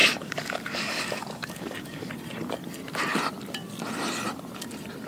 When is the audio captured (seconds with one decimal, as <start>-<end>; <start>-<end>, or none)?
2.1-5.1